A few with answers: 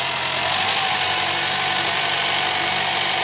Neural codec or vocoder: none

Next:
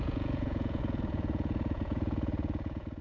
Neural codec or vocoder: vocoder, Vocos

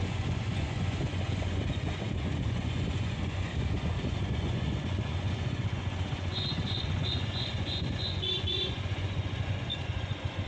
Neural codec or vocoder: vocoder, Vocos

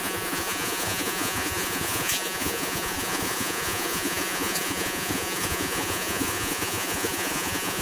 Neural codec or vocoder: vocoder, Vocos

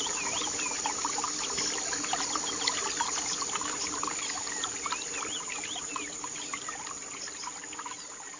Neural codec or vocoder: none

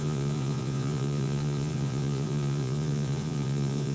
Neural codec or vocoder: vocoder, Vocos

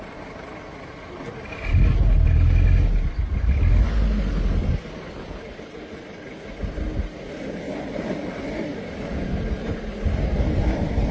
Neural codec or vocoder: none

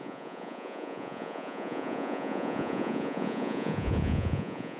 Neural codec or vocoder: vocoder, Vocos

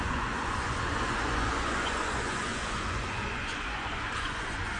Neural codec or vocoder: vocoder, Vocos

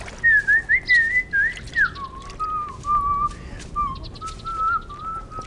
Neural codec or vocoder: none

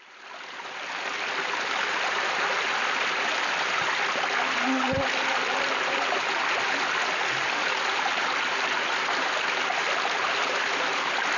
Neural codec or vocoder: none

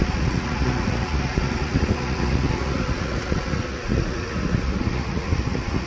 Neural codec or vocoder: vocoder, Vocos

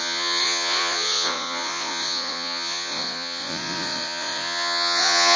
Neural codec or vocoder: vocoder, Vocos